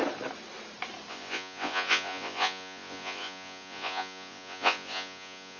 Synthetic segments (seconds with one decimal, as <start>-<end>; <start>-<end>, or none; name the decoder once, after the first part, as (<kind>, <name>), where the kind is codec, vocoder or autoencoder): 1.1-5.6 (vocoder, Vocos)